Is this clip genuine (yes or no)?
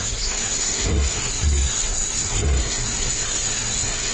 no